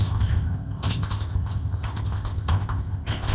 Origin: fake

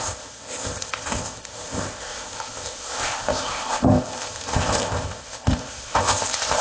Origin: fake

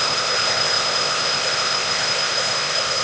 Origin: fake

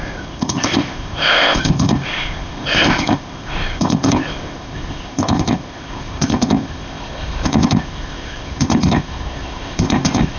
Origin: fake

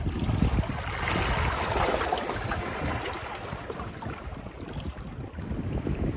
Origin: real